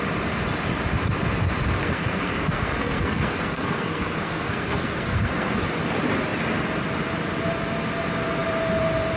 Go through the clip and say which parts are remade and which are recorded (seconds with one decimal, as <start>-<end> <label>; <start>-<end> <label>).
0.0-1.8 recorded; 1.8-5.6 remade; 5.6-9.2 recorded